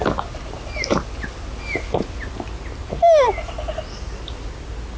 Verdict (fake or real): real